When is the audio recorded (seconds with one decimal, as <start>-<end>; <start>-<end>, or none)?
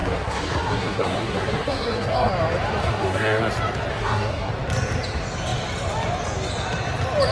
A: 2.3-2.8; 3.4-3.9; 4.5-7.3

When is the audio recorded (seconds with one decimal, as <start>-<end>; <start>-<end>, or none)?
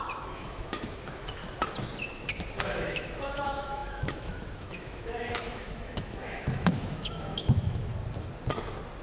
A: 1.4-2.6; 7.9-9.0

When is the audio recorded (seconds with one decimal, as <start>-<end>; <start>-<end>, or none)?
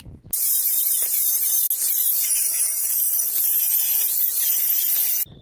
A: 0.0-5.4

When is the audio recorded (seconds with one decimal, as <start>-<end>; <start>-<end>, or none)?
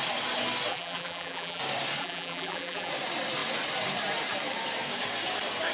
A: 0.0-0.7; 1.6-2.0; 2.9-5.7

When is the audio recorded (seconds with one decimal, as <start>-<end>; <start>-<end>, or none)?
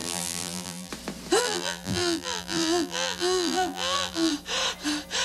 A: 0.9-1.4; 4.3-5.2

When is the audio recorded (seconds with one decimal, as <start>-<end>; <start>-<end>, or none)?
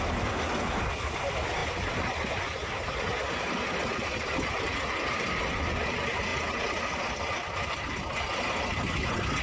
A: 0.0-9.4